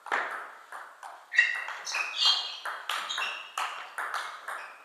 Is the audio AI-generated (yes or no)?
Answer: no